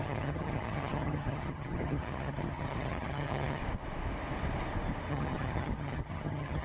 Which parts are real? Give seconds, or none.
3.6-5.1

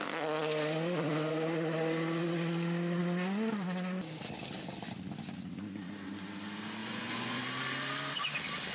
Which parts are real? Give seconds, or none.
0.0-6.8; 7.4-8.7

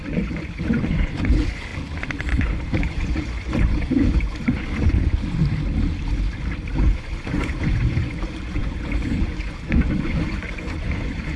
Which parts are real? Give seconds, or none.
1.7-2.2; 5.4-6.8

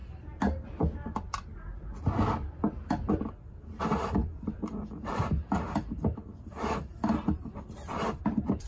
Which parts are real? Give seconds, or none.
0.0-3.1

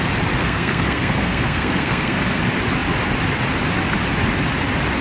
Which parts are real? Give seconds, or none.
0.0-0.4; 2.4-5.0

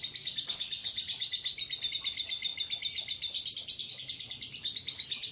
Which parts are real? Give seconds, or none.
0.0-5.3

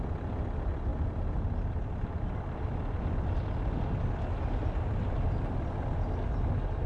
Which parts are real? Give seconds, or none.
0.0-6.9